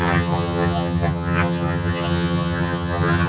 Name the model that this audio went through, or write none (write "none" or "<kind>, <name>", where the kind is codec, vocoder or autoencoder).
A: vocoder, HiFi-GAN